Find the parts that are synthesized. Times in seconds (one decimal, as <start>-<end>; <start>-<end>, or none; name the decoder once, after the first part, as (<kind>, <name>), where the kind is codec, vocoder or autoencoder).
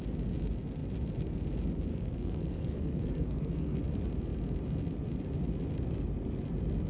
1.9-3.8 (codec, SNAC)